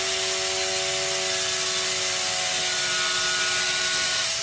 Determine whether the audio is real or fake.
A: real